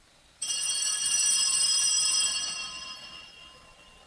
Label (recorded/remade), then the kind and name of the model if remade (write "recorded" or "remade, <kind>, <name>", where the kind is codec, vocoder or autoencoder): remade, vocoder, BigVGAN v2